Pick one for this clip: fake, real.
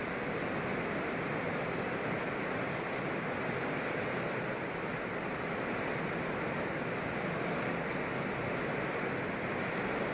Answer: real